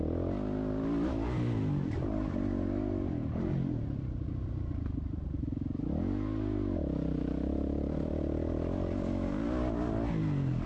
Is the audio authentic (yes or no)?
yes